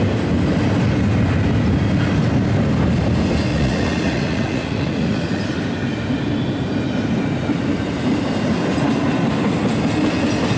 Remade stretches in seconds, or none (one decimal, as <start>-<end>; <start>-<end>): 3.5-5.4